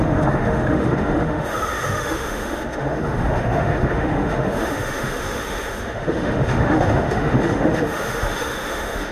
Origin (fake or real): fake